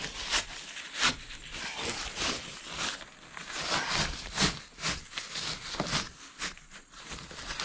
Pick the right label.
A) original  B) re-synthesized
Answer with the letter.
A